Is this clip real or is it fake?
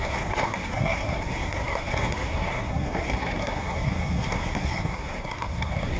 fake